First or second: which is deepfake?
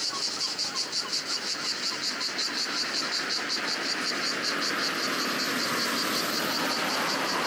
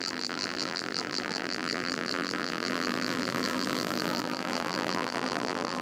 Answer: second